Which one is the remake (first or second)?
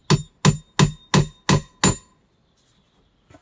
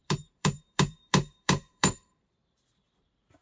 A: second